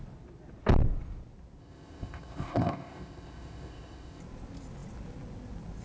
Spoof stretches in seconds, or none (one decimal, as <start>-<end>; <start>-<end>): 1.6-4.2